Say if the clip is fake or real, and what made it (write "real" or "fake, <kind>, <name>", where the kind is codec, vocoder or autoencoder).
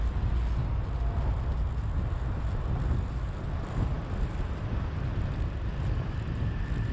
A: real